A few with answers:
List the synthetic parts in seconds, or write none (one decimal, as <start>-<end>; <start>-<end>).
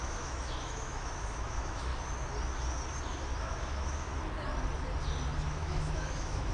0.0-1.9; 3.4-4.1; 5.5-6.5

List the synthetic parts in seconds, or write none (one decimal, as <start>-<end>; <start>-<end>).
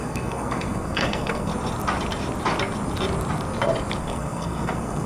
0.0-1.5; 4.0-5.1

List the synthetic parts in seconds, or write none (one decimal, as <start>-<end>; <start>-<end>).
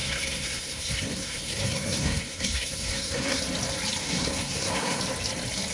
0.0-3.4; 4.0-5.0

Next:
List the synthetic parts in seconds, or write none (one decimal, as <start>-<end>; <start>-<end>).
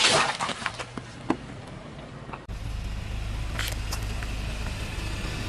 0.5-2.1